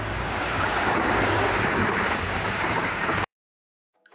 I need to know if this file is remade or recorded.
remade